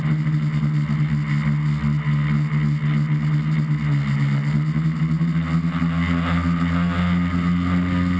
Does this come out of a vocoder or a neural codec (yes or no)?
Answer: no